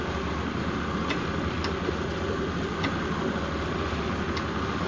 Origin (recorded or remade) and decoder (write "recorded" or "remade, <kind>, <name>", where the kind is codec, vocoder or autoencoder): recorded